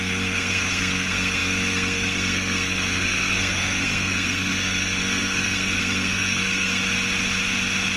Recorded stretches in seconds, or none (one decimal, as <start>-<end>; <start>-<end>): 6.8-8.0